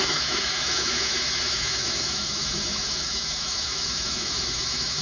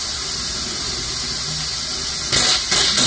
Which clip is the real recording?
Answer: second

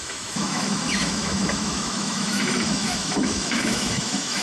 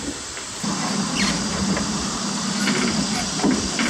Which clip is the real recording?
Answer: second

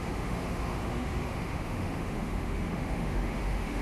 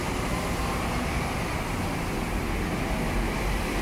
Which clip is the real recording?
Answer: second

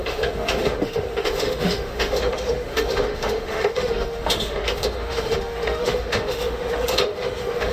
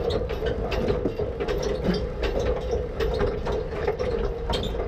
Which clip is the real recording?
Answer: second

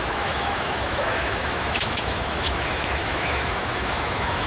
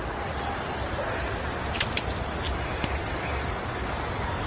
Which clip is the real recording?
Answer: second